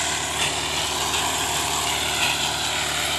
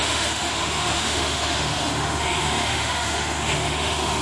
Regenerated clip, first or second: second